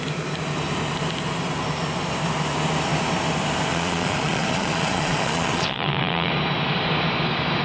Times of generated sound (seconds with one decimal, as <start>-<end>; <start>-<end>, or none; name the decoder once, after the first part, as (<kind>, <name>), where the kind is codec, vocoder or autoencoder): 3.7-6.3 (vocoder, Vocos)